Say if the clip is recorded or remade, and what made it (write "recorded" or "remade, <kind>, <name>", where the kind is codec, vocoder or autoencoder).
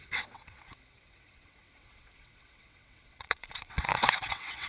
remade, vocoder, WaveNeXt